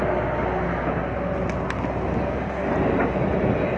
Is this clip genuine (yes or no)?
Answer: yes